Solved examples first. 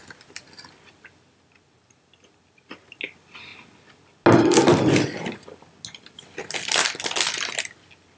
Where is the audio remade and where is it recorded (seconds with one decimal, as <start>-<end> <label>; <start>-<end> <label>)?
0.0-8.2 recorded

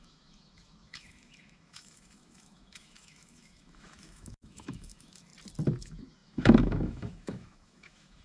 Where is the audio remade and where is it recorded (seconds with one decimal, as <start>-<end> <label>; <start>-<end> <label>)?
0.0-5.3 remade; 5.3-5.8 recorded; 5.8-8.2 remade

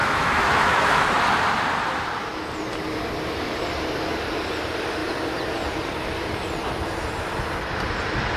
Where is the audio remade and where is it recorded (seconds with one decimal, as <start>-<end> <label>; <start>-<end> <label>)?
0.0-1.1 remade; 1.1-8.4 recorded

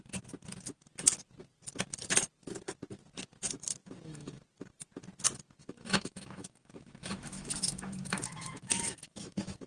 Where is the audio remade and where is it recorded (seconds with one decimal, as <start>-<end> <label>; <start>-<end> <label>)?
0.0-3.8 recorded; 3.8-4.4 remade; 4.4-5.6 recorded; 5.6-9.7 remade

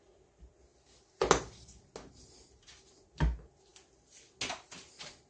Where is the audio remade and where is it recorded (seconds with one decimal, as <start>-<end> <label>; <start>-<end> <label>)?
0.0-5.3 recorded

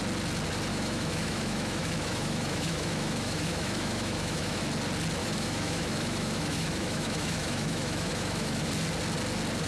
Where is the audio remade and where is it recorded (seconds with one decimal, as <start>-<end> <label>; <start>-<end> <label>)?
0.0-0.7 recorded; 0.7-4.6 remade; 4.6-5.2 recorded; 5.2-8.7 remade; 8.7-9.7 recorded

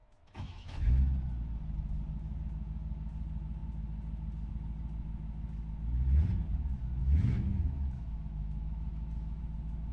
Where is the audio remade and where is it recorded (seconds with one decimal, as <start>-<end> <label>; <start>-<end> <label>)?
0.0-1.0 remade; 1.0-7.0 recorded; 7.0-9.4 remade; 9.4-9.9 recorded

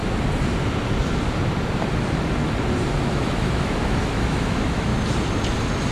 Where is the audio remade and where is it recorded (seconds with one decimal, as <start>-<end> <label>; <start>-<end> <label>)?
0.0-3.1 recorded; 3.1-4.9 remade; 4.9-5.9 recorded